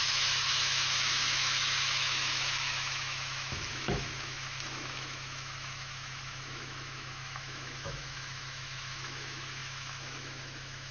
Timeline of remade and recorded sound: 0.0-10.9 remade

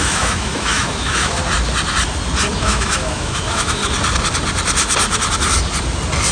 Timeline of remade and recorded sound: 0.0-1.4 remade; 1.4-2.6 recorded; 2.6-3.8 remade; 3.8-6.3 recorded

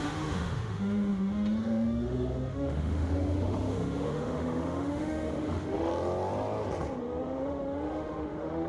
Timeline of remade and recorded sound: 0.0-5.9 remade; 5.9-7.0 recorded; 7.0-8.7 remade

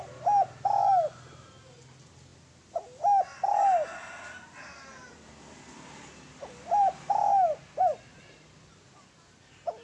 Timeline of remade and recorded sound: 0.0-9.8 recorded